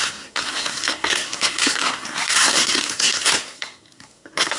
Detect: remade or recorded remade